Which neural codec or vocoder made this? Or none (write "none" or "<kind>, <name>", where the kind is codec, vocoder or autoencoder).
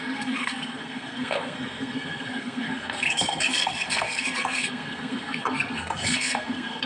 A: codec, SNAC